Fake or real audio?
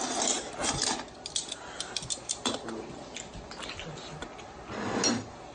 real